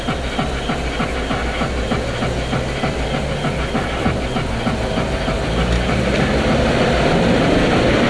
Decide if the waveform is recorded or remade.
recorded